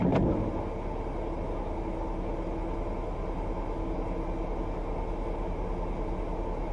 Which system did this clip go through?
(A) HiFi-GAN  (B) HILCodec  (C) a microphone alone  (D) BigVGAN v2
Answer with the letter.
C